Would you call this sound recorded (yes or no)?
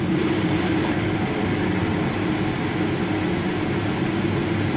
yes